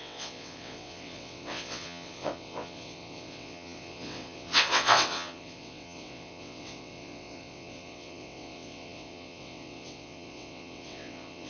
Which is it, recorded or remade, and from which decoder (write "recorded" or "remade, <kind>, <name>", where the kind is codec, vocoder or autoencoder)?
remade, vocoder, WaveNeXt